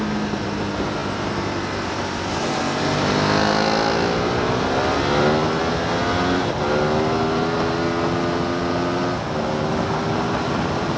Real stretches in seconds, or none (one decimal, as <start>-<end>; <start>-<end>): 0.0-11.0